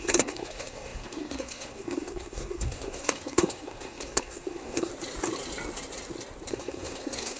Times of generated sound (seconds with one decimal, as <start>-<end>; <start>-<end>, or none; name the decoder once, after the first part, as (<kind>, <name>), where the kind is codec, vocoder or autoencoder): 0.0-4.9 (codec, SNAC); 6.5-7.4